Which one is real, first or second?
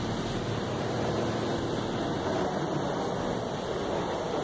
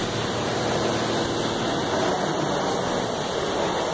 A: second